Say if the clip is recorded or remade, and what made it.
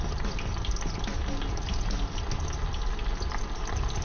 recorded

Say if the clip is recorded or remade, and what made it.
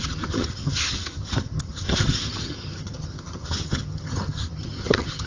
remade, vocoder, HiFi-GAN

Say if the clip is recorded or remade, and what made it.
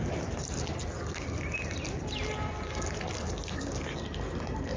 recorded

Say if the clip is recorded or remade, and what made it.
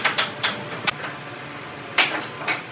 recorded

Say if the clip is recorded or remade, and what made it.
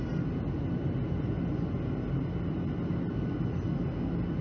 recorded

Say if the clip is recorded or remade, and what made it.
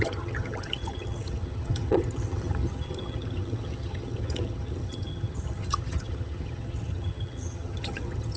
remade, vocoder, HiFi-GAN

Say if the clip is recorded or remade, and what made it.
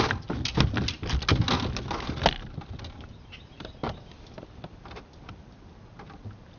recorded